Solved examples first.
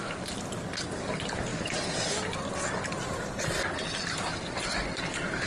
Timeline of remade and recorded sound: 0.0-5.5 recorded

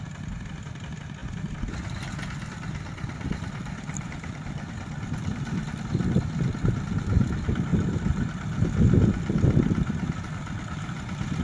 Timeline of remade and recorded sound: 0.0-11.4 recorded